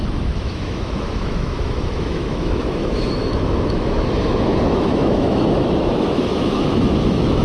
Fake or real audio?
fake